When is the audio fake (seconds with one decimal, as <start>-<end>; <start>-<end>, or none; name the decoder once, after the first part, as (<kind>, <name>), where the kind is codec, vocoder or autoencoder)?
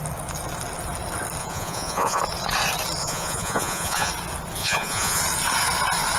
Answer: 1.4-2.2 (vocoder, Vocos); 3.0-4.1; 4.6-5.2